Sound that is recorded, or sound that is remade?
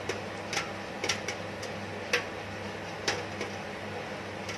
recorded